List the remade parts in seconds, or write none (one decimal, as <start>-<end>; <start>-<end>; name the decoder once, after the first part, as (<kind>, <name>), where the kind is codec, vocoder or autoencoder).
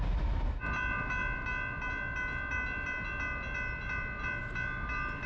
none